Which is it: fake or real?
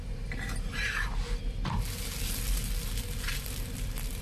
real